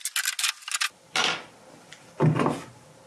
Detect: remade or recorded recorded